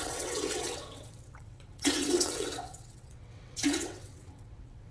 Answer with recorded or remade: remade